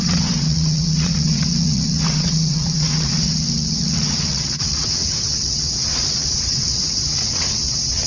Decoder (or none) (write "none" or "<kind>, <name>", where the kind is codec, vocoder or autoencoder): vocoder, WaveNeXt